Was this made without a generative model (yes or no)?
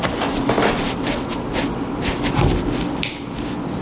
yes